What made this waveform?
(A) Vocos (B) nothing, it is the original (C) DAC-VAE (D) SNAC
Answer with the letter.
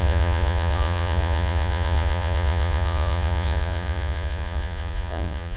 A